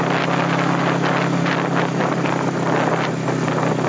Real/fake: real